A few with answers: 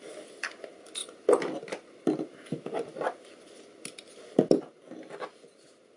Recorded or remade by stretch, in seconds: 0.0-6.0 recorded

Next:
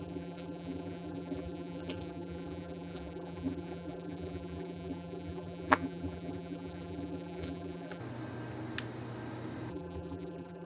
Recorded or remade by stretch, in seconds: 0.0-8.0 remade; 8.0-9.7 recorded; 9.7-10.7 remade

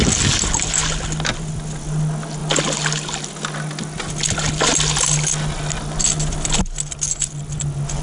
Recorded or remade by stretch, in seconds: 0.0-8.0 recorded

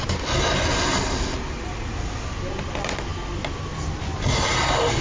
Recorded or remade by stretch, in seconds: 0.0-5.0 recorded